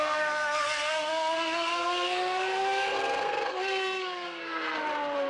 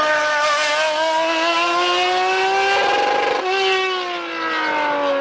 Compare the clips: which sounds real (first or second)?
second